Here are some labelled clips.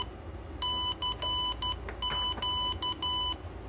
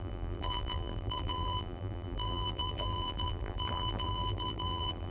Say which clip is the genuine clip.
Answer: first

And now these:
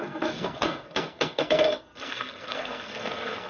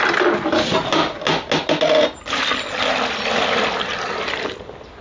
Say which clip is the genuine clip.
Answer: second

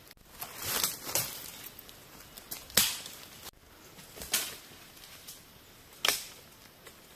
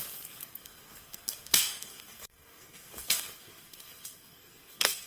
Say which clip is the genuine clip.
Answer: first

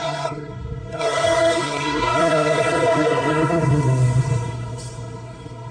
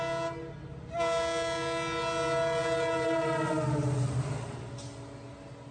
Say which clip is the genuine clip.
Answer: second